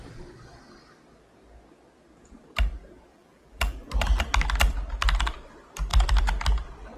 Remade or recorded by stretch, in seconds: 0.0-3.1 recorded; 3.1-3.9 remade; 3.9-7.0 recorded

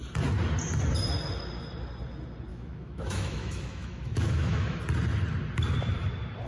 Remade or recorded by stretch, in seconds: 0.0-2.5 recorded; 2.5-4.8 remade; 4.8-6.5 recorded

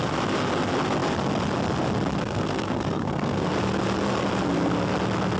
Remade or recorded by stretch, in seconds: 0.0-2.2 recorded; 2.2-3.5 remade; 3.5-5.4 recorded

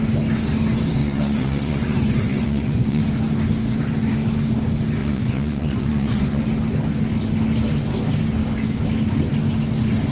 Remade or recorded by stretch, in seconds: 0.0-1.0 recorded; 1.0-3.0 remade; 3.0-5.0 recorded; 5.0-6.4 remade; 6.4-10.1 recorded

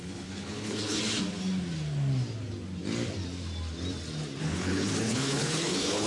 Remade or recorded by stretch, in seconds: 0.0-1.0 remade; 1.0-4.4 recorded; 4.4-6.1 remade